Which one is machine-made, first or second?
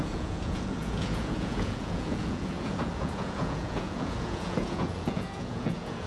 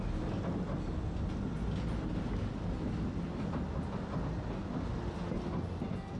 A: first